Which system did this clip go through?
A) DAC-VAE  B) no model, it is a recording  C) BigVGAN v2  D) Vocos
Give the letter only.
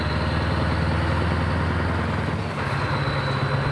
B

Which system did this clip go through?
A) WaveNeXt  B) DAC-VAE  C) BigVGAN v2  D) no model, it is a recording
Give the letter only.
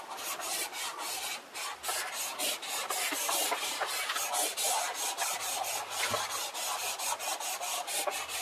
D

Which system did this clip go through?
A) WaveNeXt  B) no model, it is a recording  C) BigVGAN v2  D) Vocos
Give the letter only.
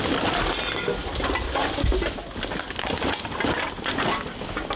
B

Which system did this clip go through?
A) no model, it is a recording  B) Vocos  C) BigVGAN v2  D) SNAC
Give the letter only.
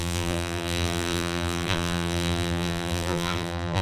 C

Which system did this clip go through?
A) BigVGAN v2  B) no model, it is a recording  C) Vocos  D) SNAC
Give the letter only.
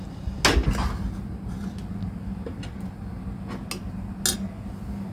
B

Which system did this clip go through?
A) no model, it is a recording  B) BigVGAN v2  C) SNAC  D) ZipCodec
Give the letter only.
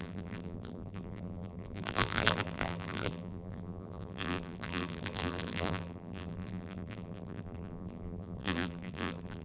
B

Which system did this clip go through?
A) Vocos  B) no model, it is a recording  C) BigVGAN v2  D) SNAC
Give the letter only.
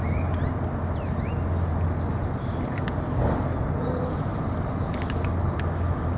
B